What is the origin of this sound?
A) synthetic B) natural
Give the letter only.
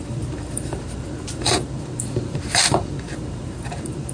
A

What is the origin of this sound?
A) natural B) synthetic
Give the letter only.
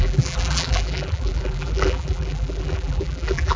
B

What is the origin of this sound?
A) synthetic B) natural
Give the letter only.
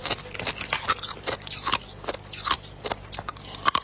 B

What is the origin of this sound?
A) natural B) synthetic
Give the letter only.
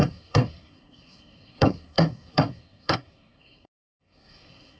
B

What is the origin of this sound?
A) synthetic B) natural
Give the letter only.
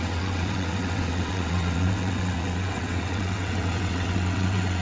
A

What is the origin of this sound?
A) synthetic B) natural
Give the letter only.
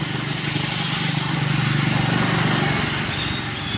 B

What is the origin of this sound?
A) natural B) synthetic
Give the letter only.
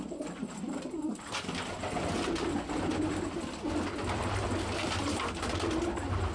A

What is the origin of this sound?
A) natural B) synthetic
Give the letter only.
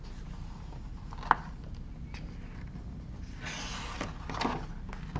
A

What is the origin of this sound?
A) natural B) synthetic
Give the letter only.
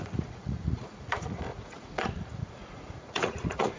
B